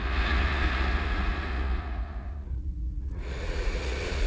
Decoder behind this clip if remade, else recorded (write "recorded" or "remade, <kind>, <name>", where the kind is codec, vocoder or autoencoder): remade, vocoder, Vocos